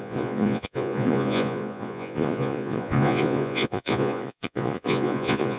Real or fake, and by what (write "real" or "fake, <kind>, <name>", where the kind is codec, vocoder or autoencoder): fake, vocoder, Vocos